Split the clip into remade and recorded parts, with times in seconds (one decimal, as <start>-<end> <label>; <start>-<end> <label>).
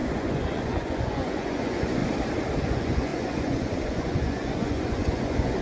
0.0-2.0 remade; 2.0-2.6 recorded; 2.6-5.6 remade